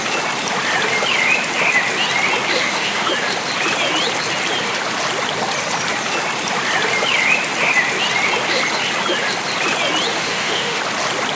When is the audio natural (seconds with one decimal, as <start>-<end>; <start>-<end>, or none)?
0.0-2.6; 3.1-10.1; 10.8-11.4